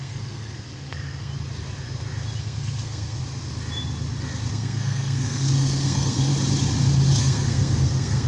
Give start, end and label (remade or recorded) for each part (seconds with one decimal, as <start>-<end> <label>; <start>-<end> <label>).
0.0-1.3 remade; 1.3-2.4 recorded; 2.4-3.2 remade; 3.2-4.5 recorded; 4.5-6.3 remade; 6.3-7.2 recorded; 7.2-8.3 remade